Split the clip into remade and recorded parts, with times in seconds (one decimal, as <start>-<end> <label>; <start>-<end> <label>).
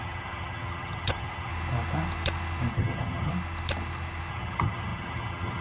0.0-1.5 remade; 1.5-2.7 recorded; 2.7-3.3 remade; 3.3-4.3 recorded; 4.3-5.6 remade